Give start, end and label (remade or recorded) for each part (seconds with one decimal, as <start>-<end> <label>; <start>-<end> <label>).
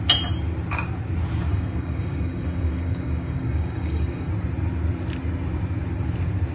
0.0-1.5 recorded; 1.5-4.3 remade; 4.3-6.5 recorded